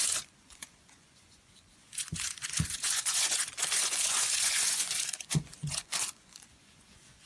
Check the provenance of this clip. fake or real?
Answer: fake